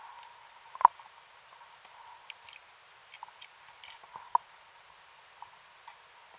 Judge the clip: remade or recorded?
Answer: recorded